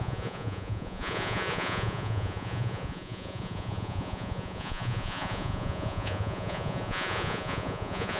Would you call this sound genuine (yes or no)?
no